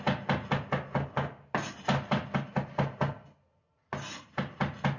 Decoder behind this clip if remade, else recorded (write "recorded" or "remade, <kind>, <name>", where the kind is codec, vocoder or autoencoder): recorded